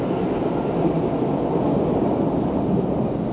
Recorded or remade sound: recorded